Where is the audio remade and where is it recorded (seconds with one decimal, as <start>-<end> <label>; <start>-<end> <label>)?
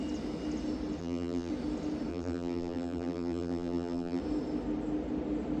0.0-1.0 recorded; 1.0-1.5 remade; 1.5-2.1 recorded; 2.1-4.2 remade; 4.2-5.6 recorded